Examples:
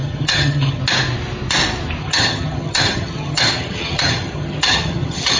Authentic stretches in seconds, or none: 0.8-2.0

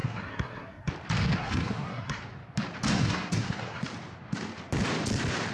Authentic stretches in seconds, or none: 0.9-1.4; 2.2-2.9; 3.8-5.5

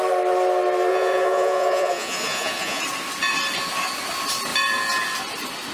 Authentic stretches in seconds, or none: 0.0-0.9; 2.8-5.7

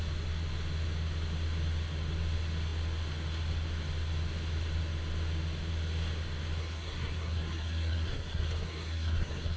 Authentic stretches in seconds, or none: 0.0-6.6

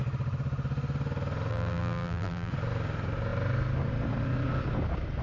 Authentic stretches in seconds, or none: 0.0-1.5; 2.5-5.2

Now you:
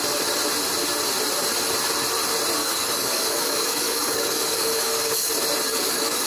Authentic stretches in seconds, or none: 0.0-2.6; 5.3-5.7